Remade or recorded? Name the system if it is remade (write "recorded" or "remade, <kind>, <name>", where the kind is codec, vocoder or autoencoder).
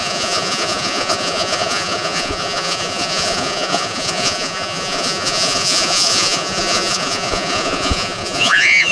remade, vocoder, Vocos